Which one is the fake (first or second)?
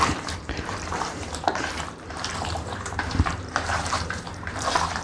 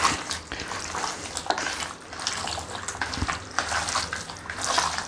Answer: first